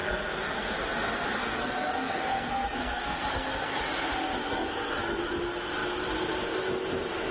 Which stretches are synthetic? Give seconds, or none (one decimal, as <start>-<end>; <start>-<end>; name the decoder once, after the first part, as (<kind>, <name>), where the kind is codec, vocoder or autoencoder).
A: 0.0-0.7 (codec, SNAC); 1.4-3.8; 4.5-5.2